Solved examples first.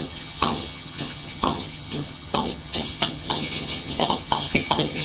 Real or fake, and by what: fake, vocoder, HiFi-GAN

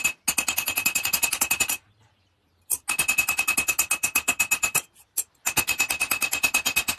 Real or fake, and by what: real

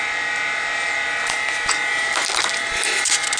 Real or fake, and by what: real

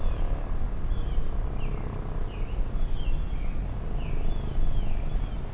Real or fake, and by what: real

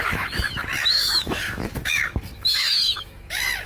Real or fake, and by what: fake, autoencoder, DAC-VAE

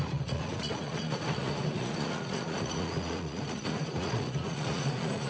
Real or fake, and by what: fake, vocoder, Vocos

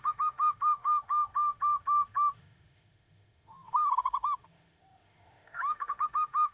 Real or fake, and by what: fake, autoencoder, DAC-VAE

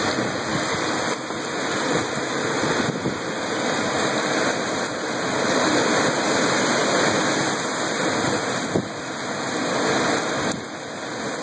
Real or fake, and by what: real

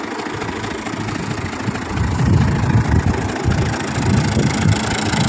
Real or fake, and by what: real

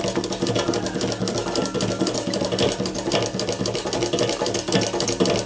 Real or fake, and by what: real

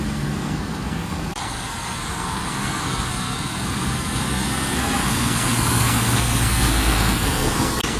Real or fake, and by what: fake, codec, SNAC